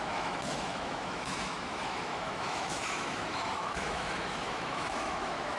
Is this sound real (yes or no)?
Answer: no